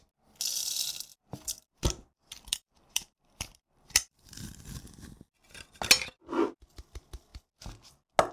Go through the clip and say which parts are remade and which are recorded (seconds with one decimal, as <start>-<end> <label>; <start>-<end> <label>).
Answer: 0.0-1.1 recorded; 1.1-5.0 remade; 5.0-8.3 recorded